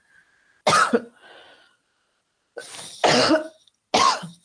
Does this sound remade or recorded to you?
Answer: recorded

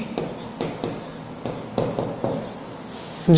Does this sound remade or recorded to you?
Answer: recorded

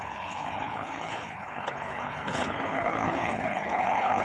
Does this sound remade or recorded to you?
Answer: remade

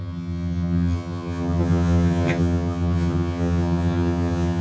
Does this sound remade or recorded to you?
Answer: remade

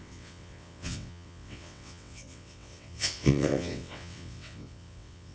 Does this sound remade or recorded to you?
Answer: remade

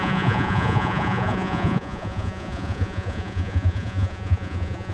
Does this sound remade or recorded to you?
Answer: remade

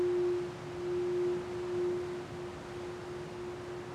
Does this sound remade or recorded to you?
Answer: recorded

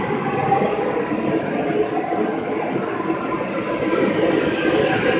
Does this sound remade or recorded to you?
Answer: recorded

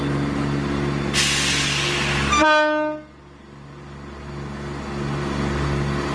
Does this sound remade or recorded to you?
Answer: recorded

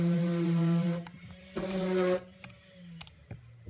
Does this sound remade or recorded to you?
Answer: remade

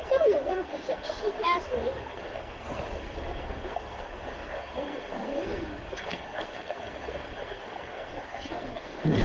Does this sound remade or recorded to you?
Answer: remade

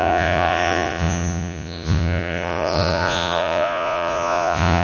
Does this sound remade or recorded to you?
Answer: remade